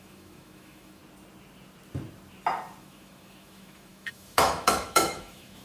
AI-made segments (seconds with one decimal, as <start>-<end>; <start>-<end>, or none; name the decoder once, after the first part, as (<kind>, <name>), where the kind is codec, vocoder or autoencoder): 0.0-1.0 (autoencoder, DAC-VAE); 2.8-5.6